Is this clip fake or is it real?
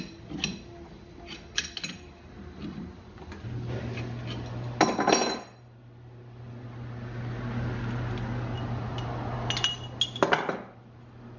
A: real